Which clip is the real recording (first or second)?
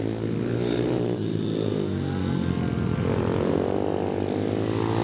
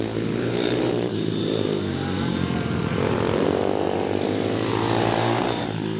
first